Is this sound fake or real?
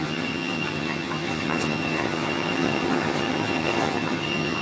fake